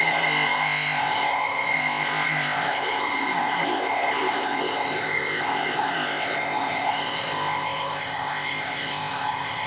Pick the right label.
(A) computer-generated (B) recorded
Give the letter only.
A